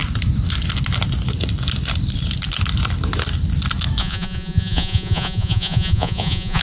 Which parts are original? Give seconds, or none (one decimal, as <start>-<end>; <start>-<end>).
0.0-4.0